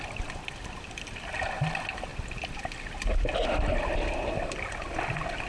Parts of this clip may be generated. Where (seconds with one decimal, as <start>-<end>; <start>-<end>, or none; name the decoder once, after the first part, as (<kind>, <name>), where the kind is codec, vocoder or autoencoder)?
none